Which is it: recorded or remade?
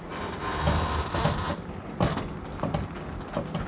recorded